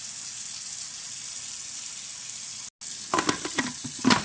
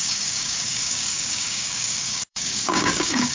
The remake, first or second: second